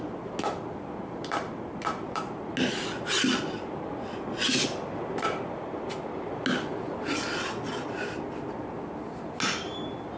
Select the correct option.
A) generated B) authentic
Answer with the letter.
B